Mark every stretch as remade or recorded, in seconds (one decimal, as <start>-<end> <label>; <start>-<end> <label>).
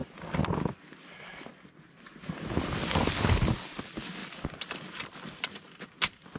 0.0-6.4 recorded